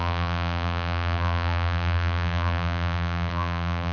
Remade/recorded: remade